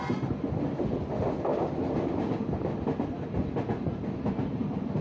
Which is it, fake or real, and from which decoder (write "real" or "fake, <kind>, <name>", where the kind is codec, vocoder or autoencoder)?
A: real